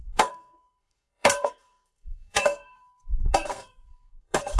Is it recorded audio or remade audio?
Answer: remade